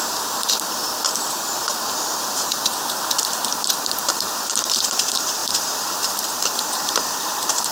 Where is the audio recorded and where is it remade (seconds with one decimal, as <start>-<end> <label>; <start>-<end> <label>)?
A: 0.0-2.7 remade; 2.7-3.5 recorded; 3.5-7.7 remade